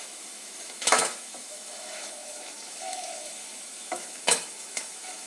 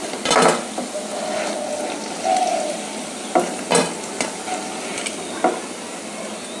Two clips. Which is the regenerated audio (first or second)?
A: first